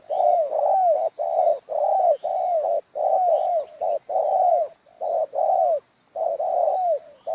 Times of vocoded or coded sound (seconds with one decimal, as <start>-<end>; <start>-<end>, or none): none